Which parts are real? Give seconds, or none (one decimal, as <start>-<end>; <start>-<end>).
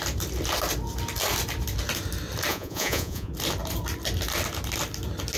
0.0-2.5; 3.3-5.4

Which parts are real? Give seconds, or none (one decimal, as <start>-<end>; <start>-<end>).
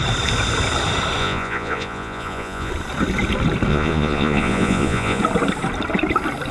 0.0-1.2; 2.7-3.7; 5.2-6.5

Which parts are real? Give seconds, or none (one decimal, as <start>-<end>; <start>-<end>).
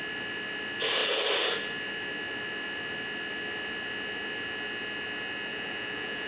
0.0-5.5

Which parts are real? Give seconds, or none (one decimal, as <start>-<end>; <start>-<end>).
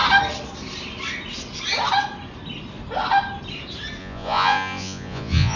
0.0-4.0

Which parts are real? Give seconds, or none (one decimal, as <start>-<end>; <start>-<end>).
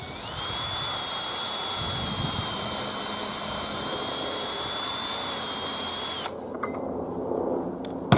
0.0-8.2